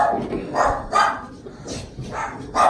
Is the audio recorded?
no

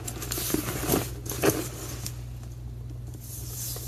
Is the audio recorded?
yes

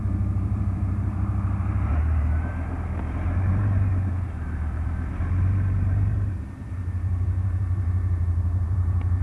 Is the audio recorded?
no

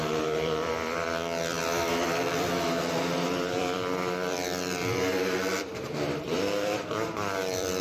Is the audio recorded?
no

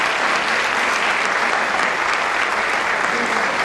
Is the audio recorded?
yes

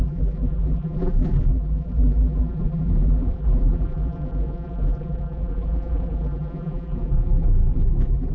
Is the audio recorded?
no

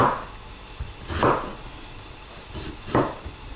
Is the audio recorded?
yes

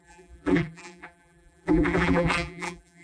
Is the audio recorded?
no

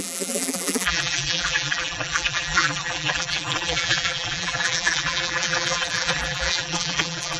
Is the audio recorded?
no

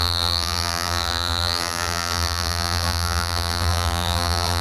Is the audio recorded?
no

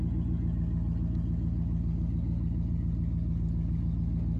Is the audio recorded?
yes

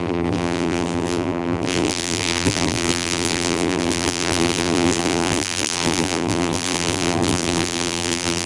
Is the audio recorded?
no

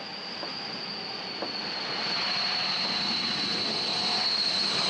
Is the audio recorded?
yes